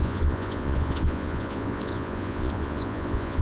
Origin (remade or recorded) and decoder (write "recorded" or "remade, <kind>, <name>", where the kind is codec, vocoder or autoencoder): remade, vocoder, Vocos